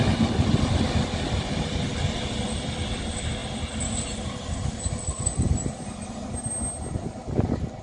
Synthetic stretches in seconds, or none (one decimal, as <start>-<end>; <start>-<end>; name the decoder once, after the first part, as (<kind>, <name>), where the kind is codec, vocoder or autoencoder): none